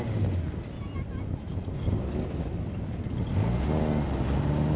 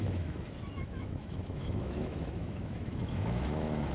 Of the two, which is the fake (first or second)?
second